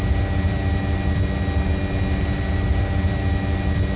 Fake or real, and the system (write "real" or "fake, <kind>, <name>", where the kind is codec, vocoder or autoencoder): real